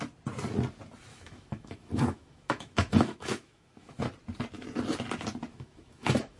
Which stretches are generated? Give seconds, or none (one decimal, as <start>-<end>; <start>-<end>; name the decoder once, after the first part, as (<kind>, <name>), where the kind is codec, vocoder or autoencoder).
1.1-4.0 (autoencoder, DAC-VAE); 5.5-6.4